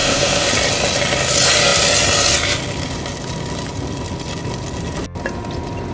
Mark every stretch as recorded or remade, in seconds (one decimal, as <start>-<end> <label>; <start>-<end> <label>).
0.0-0.5 remade; 0.5-5.9 recorded